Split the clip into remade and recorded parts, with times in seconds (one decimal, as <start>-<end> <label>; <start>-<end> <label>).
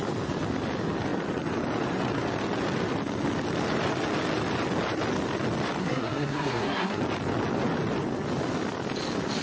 0.0-5.8 recorded; 5.8-7.0 remade; 7.0-9.4 recorded